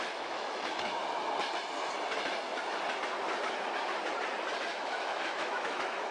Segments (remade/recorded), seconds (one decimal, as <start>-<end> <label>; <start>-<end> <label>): 0.0-1.0 remade; 1.0-4.7 recorded; 4.7-6.1 remade